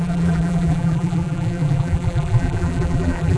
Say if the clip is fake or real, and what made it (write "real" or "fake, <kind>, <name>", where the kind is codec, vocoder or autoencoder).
fake, vocoder, BigVGAN v2